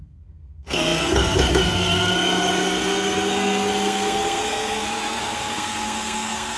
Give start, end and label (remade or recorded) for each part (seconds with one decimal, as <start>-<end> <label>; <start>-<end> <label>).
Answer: 0.0-6.6 remade